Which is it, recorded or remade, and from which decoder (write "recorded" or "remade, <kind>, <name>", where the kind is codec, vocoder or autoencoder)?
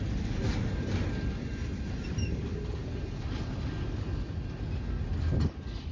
recorded